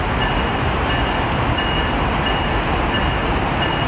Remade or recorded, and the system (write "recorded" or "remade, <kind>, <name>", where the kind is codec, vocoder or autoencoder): recorded